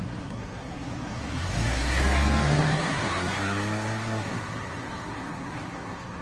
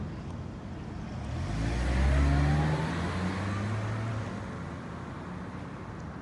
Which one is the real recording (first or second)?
second